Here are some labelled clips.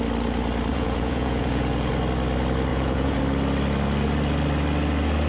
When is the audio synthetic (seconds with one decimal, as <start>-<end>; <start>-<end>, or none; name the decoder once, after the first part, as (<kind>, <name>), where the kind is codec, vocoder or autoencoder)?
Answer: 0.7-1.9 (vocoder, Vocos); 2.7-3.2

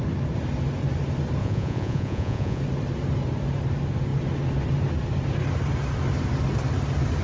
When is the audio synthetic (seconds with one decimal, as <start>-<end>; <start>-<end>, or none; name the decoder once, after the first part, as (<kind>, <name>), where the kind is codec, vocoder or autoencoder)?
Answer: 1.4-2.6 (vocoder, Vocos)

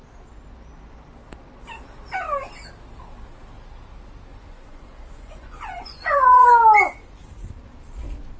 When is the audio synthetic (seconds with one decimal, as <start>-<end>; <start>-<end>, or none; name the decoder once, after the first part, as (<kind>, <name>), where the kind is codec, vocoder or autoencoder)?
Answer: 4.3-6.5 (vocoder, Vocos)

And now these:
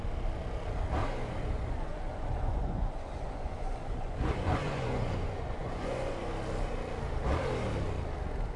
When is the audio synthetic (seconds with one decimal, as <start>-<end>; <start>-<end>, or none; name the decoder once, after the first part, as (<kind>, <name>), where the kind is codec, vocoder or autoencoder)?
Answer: 1.0-6.2 (vocoder, Vocos)

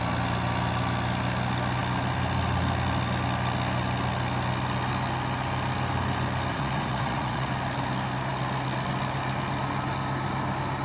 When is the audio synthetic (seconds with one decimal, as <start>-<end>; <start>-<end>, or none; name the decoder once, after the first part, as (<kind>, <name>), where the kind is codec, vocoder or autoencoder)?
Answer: 6.5-7.5 (vocoder, Vocos)